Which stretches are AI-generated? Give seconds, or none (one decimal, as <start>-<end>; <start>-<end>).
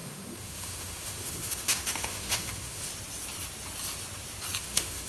0.0-2.9; 4.6-5.1